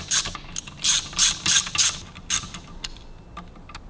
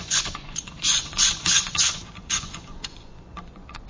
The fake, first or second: second